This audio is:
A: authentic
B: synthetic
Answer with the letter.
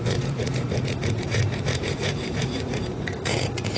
B